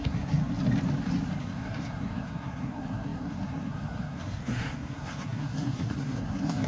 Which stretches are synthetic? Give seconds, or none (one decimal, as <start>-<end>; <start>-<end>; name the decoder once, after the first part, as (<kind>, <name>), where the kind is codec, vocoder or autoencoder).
0.0-0.4 (codec, SNAC); 1.4-6.7